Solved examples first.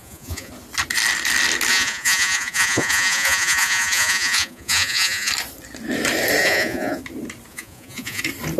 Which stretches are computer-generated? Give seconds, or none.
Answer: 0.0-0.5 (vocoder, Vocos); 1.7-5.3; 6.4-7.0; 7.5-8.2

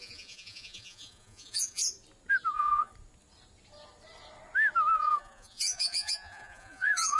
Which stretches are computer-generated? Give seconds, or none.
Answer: 0.0-1.8 (vocoder, Vocos); 2.5-2.9; 4.9-7.2

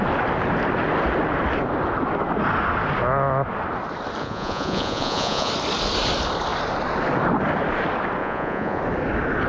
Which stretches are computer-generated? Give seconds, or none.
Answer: 4.2-5.5 (vocoder, Vocos); 8.2-8.8

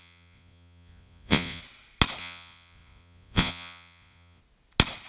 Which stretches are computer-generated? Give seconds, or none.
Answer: 0.0-1.6 (vocoder, Vocos); 2.2-4.4

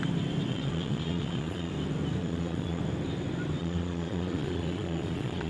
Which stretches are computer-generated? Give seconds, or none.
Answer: 0.5-1.7 (vocoder, Vocos); 2.2-2.8; 3.6-5.5

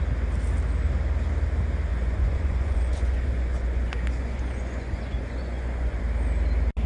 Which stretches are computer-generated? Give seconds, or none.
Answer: 1.9-6.0 (vocoder, Vocos)